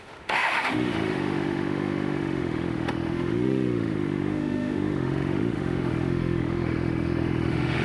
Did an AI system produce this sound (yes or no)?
yes